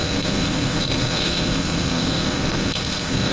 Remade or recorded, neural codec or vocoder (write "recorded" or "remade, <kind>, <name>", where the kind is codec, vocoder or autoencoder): remade, codec, SNAC